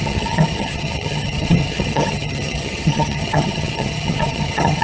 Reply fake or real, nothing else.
fake